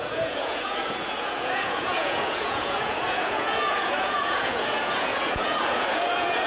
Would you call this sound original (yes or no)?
no